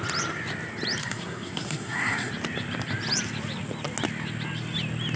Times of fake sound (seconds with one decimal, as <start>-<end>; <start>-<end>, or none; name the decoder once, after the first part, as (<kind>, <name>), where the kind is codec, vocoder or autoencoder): 1.0-2.3 (codec, SNAC)